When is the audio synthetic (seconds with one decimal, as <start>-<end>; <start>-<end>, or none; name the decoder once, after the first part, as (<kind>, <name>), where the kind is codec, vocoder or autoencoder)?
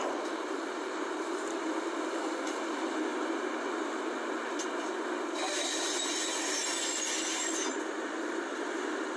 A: 0.0-3.1 (vocoder, BigVGAN v2); 3.6-6.6; 7.3-9.2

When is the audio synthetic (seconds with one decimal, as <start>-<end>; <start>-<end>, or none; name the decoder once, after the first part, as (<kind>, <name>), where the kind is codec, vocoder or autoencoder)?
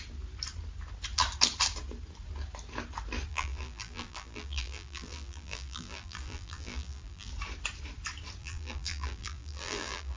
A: 3.3-7.3 (vocoder, BigVGAN v2); 8.4-10.2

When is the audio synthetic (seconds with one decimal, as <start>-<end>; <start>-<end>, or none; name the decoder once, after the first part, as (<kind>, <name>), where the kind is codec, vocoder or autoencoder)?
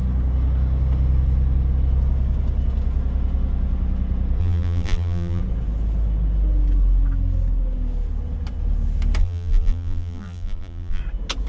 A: 4.4-5.4 (vocoder, BigVGAN v2); 9.2-11.0